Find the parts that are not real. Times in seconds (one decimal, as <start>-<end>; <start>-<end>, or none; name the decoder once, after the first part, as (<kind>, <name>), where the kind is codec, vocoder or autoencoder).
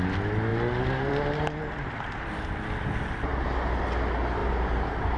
none